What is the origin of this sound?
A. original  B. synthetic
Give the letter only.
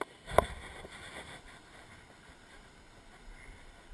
A